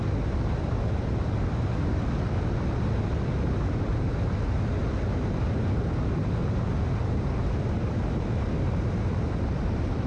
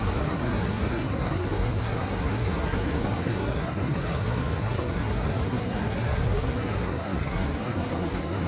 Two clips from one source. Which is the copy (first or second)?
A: second